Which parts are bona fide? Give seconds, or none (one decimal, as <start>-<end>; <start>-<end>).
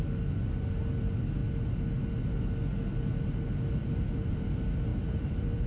0.0-3.8; 4.4-4.9